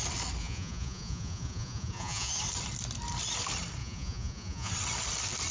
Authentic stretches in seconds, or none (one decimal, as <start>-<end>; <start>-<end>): 0.0-0.4; 2.3-3.8; 4.7-5.5